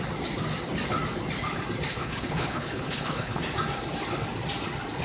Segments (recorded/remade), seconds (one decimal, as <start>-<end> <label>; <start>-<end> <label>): 0.0-1.9 recorded; 1.9-3.4 remade; 3.4-5.0 recorded